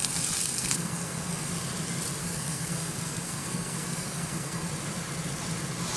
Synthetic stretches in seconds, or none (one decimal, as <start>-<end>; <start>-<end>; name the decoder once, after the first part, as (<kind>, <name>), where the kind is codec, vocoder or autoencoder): 0.0-1.5 (codec, SNAC); 2.2-4.7